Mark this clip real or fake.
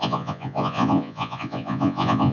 fake